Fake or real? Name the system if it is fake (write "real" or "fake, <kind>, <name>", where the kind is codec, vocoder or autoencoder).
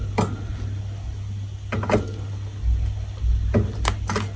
real